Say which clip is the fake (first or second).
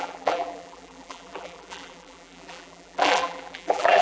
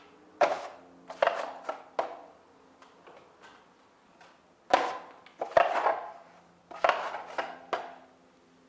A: first